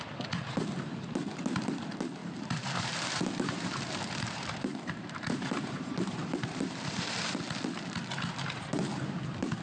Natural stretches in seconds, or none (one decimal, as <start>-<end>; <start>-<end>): 0.0-2.2; 7.4-9.6